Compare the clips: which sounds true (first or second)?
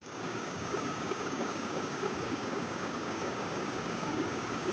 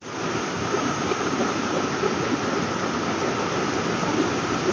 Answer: second